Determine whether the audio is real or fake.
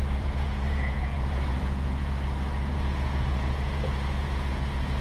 fake